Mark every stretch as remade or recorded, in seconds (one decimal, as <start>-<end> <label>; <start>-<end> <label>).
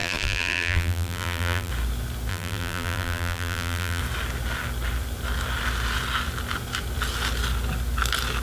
0.0-1.7 remade; 1.7-2.3 recorded; 2.3-4.0 remade; 4.0-8.4 recorded